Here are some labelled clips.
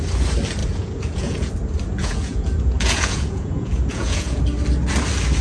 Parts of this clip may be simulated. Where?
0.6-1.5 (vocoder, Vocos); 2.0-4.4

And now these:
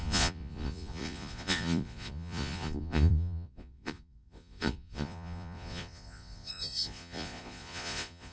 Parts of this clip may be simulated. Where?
0.0-8.3 (vocoder, Vocos)

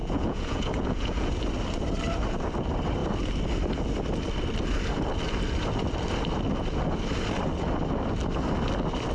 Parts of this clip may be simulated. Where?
0.0-1.3 (vocoder, Vocos)

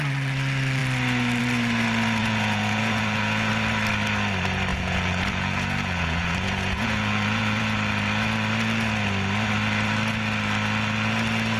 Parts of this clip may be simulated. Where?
2.2-3.5 (vocoder, Vocos); 4.7-7.6